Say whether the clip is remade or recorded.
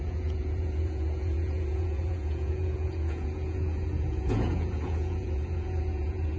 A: remade